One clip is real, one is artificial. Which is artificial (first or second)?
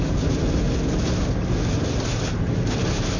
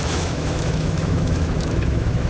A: second